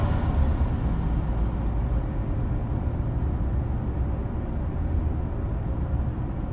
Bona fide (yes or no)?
yes